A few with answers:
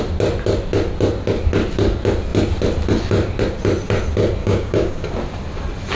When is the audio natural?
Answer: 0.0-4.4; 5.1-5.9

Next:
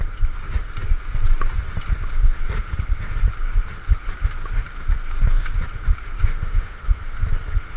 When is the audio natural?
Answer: 0.0-6.2; 7.0-7.8

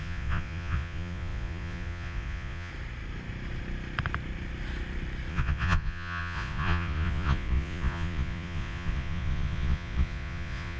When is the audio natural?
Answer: 2.7-5.3

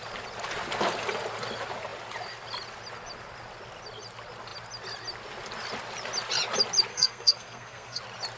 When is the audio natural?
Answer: 0.0-6.9; 8.0-8.4

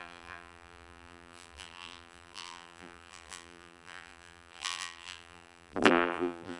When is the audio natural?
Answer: none